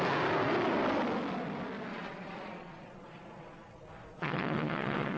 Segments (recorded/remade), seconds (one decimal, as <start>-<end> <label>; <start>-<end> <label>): 0.0-1.9 recorded; 1.9-5.2 remade